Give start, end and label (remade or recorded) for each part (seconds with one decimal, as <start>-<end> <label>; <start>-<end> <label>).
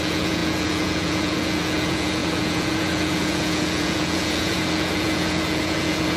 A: 0.0-6.2 remade